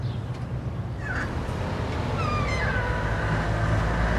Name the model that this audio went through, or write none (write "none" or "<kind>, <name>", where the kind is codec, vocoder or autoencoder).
none